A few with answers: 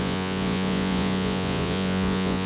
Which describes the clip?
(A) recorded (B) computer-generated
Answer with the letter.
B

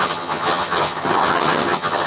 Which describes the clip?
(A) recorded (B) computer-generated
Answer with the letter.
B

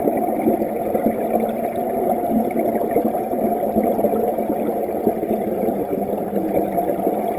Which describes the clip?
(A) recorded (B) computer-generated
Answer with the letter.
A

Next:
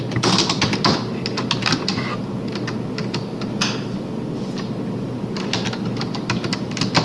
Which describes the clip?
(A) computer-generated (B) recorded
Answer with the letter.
B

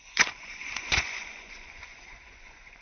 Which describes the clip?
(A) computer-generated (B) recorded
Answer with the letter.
A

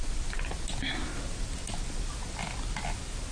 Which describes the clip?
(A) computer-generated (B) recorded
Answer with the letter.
B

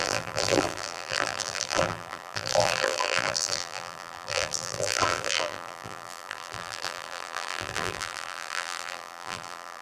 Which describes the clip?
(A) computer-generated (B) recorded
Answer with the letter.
A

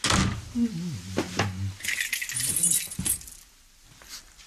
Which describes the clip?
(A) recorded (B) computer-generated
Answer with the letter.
A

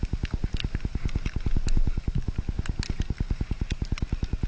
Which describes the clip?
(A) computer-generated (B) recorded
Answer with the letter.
B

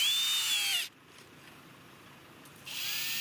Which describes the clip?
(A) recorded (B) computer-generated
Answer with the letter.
A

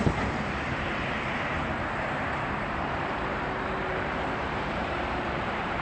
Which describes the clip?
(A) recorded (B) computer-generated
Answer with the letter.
B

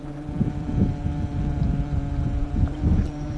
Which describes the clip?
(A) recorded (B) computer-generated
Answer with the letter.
B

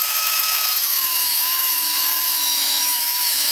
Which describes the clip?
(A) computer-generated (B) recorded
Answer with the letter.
A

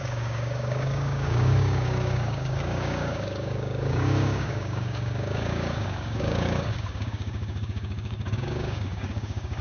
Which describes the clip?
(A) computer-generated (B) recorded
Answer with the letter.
A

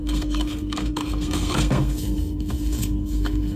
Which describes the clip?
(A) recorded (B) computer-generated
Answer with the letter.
B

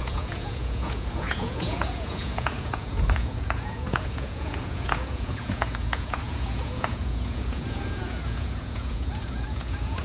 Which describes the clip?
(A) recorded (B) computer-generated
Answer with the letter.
B